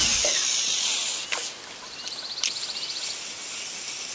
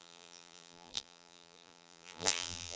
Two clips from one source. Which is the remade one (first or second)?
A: second